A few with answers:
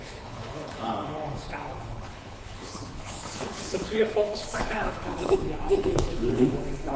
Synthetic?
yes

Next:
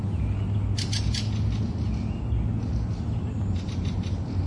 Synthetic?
no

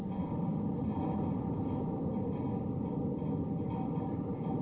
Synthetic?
no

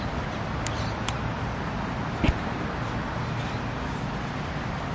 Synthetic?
no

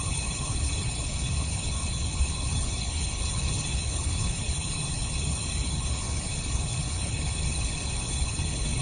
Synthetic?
yes